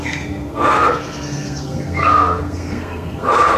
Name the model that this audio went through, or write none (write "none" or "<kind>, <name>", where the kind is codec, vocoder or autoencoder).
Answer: codec, SNAC